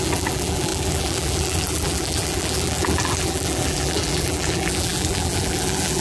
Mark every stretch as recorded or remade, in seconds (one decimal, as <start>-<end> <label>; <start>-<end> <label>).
0.0-6.0 remade